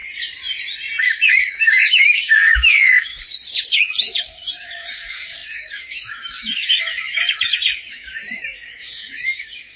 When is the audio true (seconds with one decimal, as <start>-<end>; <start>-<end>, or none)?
0.0-1.0; 3.2-3.7